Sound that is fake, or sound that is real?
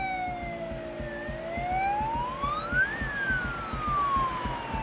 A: real